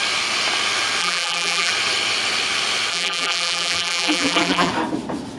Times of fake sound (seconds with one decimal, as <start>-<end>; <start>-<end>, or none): 1.0-1.7; 2.9-4.7